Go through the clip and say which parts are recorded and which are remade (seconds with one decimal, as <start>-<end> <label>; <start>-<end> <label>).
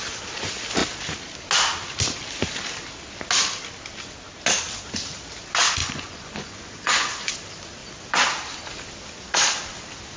0.0-5.8 recorded; 5.8-7.3 remade; 7.3-10.2 recorded